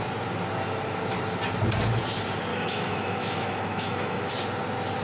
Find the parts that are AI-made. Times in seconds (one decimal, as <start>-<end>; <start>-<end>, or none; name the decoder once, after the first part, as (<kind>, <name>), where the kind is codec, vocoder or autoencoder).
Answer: 2.5-4.3 (autoencoder, DAC-VAE)